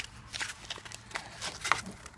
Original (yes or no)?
yes